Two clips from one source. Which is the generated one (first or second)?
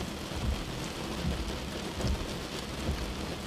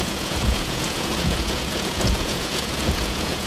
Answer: second